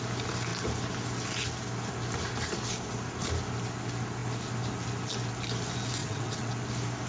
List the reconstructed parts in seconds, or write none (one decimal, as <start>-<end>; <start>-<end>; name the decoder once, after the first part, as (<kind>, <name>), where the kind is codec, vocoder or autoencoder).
6.0-6.5 (vocoder, WaveNeXt)